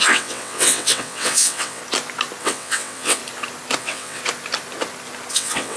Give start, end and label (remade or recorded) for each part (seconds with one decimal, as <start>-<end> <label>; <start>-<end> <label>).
0.0-1.8 remade; 1.8-2.4 recorded; 2.4-3.2 remade; 3.2-3.8 recorded; 3.8-4.2 remade; 4.2-5.3 recorded; 5.3-5.8 remade